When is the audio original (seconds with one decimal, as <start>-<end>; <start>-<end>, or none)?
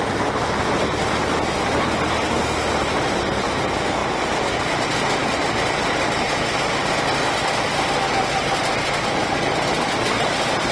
0.0-10.7